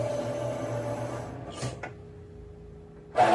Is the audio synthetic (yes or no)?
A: no